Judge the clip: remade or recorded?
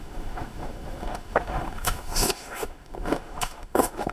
remade